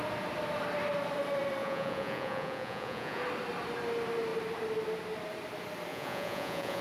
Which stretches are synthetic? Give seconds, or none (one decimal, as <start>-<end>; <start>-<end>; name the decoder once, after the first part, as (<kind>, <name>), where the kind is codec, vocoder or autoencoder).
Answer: 1.6-3.2 (vocoder, Vocos); 5.9-6.8